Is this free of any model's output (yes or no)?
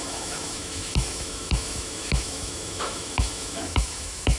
no